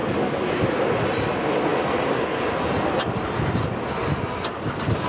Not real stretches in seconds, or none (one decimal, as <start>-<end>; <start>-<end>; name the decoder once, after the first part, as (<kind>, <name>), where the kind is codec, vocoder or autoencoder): none